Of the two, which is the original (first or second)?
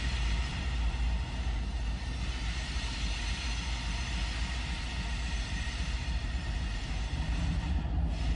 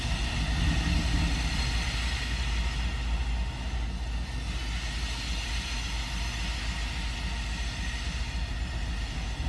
second